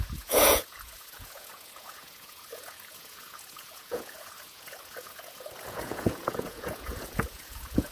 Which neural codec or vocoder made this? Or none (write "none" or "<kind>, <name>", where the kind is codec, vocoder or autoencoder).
vocoder, Vocos